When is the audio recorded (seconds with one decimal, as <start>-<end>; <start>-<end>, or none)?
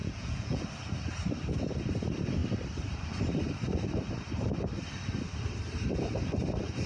0.6-6.9